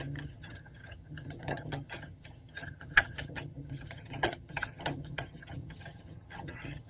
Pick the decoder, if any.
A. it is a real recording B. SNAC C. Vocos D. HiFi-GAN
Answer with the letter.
D